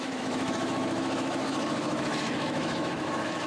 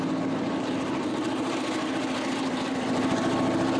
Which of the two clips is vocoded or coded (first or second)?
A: first